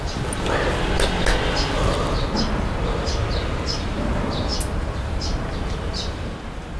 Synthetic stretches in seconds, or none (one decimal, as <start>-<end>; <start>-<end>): none